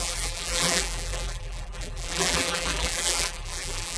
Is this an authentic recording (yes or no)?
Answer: no